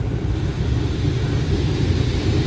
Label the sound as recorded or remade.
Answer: recorded